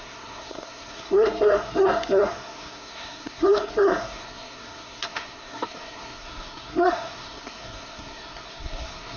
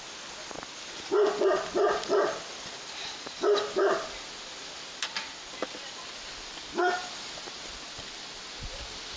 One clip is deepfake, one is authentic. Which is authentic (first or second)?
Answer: second